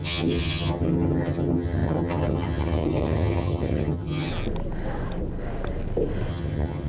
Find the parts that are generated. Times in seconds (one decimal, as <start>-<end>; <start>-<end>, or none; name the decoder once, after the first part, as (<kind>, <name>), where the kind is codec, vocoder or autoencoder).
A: 0.0-4.3 (vocoder, HiFi-GAN); 6.3-6.9